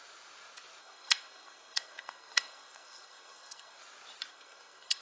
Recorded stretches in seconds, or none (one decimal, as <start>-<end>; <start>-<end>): 0.0-0.8; 3.8-4.3